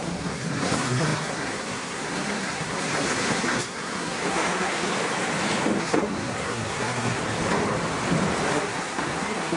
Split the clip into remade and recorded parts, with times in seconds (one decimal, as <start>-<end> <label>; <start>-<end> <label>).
0.0-4.9 remade; 4.9-5.8 recorded; 5.8-7.2 remade; 7.2-8.5 recorded; 8.5-9.6 remade